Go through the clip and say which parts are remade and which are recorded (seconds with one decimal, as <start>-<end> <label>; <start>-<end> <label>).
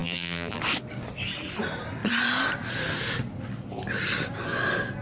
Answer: 0.0-0.6 remade; 0.6-5.0 recorded